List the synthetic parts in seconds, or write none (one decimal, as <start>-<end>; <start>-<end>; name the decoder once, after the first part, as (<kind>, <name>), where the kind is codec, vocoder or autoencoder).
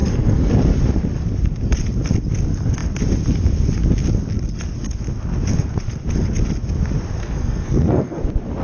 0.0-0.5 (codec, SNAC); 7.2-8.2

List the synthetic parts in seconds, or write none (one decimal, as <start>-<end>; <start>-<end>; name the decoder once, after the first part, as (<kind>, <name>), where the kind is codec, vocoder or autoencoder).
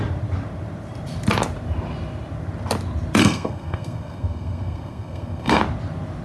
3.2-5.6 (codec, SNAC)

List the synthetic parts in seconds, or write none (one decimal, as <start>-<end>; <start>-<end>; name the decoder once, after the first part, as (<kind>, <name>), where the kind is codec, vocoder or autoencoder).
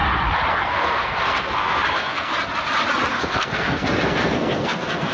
0.5-2.3 (codec, SNAC); 3.1-5.1